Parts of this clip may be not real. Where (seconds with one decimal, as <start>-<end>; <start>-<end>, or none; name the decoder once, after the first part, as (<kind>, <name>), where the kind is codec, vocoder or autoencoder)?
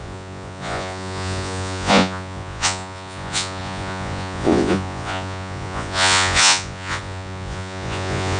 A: 0.0-8.4 (vocoder, Vocos)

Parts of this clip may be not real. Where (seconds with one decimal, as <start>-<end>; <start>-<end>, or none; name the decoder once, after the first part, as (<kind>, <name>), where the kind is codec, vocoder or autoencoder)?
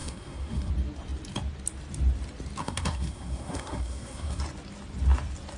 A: 0.0-0.7 (codec, SNAC); 2.6-4.4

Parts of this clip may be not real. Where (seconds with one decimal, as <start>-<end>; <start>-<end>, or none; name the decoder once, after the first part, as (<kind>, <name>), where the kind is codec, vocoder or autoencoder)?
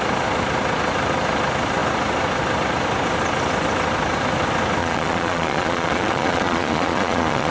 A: 4.8-7.5 (vocoder, Vocos)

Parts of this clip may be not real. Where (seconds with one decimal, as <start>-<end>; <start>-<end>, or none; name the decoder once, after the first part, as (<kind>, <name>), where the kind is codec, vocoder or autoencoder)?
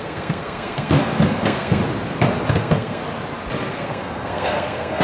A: 0.0-1.8 (codec, SNAC); 2.5-3.0; 3.7-5.0